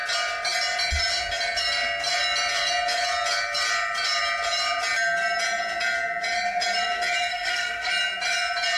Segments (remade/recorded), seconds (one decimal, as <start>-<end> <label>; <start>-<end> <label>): 0.0-7.3 recorded; 7.3-7.9 remade; 7.9-8.8 recorded